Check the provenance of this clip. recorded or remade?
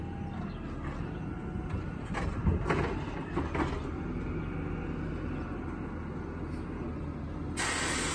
recorded